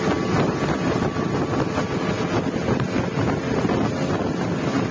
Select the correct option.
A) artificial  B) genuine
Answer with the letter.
B